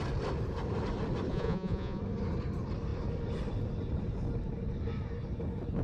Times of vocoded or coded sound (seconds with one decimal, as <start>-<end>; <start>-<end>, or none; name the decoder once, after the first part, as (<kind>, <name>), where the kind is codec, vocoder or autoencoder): 1.3-2.0 (vocoder, Vocos)